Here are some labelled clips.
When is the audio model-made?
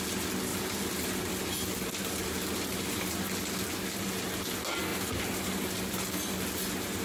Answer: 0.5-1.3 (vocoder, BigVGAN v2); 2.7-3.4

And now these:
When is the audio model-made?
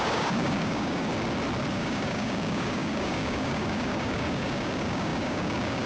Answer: 0.0-1.1 (codec, DAC); 1.7-5.9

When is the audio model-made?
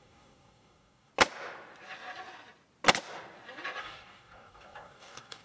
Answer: 0.0-1.1 (codec, DAC); 3.8-5.4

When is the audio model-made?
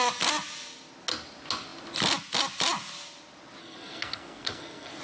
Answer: 3.6-5.0 (codec, SNAC)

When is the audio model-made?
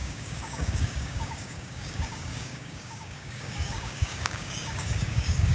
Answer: 0.0-5.5 (codec, DAC)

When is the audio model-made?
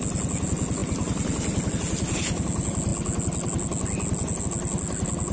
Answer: none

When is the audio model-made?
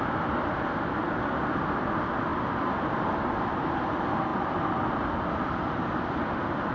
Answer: 2.3-3.6 (vocoder, BigVGAN v2); 4.3-6.2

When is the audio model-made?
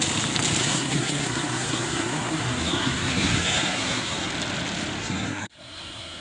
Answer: 0.6-4.3 (codec, SNAC); 5.0-6.2